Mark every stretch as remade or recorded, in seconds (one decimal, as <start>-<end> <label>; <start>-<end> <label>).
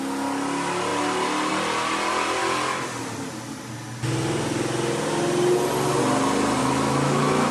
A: 0.0-6.6 recorded; 6.6-7.5 remade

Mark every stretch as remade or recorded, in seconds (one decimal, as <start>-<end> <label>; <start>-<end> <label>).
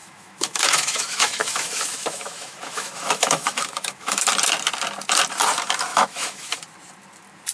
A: 0.0-4.2 remade; 4.2-5.9 recorded; 5.9-6.5 remade; 6.5-7.5 recorded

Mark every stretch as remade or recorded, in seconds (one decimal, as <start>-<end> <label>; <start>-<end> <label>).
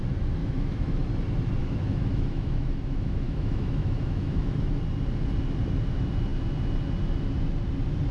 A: 0.0-0.4 recorded; 0.4-1.1 remade; 1.1-1.6 recorded; 1.6-4.8 remade; 4.8-8.1 recorded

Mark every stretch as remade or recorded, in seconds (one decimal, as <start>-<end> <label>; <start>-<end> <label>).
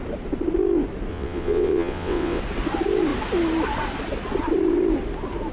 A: 0.0-1.1 recorded; 1.1-2.4 remade; 2.4-5.5 recorded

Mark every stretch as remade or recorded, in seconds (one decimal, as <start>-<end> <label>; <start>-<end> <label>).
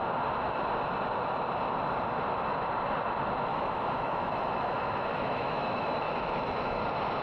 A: 0.0-3.5 recorded; 3.5-6.8 remade; 6.8-7.2 recorded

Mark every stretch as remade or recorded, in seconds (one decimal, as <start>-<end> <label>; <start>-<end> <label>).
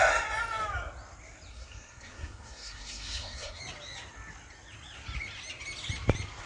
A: 0.0-1.5 recorded; 1.5-3.6 remade; 3.6-6.5 recorded